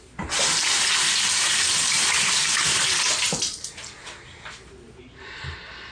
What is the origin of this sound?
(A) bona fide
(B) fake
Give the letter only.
A